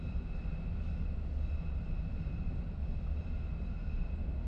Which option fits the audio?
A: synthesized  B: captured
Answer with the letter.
B